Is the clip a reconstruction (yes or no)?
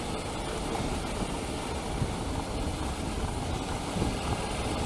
no